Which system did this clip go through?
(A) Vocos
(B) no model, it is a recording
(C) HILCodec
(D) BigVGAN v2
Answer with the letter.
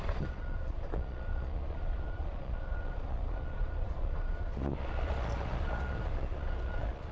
A